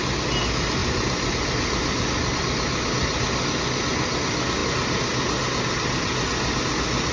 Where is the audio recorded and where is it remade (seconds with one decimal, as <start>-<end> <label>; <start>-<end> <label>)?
0.0-7.1 recorded